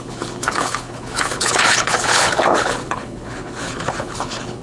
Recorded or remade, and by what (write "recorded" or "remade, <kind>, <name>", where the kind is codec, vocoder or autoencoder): remade, codec, HILCodec